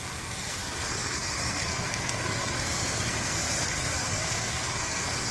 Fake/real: fake